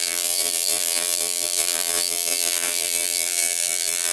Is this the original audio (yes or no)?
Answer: no